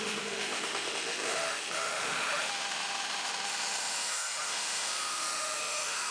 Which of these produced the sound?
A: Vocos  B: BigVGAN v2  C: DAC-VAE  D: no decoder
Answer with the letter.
C